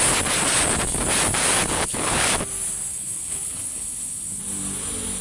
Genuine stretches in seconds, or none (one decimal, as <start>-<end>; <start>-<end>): 0.0-1.6; 2.3-2.9; 4.4-5.2